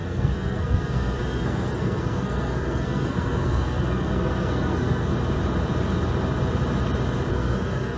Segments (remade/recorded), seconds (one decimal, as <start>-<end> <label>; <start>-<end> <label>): 0.0-5.1 remade; 5.1-7.3 recorded; 7.3-8.0 remade